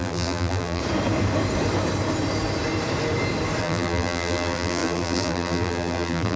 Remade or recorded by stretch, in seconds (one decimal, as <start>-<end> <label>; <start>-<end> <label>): 0.0-0.8 remade; 0.8-3.6 recorded; 3.6-6.4 remade